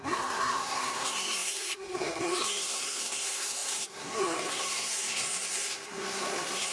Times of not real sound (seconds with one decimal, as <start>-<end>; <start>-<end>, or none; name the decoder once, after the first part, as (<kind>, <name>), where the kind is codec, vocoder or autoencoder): 0.0-6.7 (codec, SNAC)